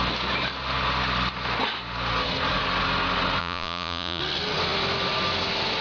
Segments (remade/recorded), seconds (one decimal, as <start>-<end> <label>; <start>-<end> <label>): 0.0-3.4 recorded; 3.4-4.2 remade; 4.2-5.8 recorded